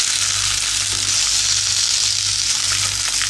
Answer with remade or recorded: recorded